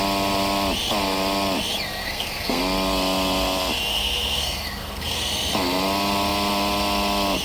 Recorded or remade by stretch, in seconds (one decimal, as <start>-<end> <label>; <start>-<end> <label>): 0.0-2.0 recorded; 2.0-2.6 remade; 2.6-3.9 recorded; 3.9-5.3 remade; 5.3-7.4 recorded